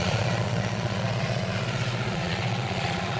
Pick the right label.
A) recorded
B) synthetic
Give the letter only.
B